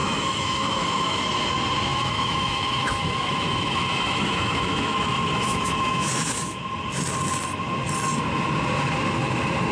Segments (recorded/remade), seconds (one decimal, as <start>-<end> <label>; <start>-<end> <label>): 0.0-1.2 remade; 1.2-1.9 recorded; 1.9-6.6 remade; 6.6-9.7 recorded